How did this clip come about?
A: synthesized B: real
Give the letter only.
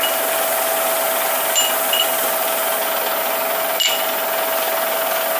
B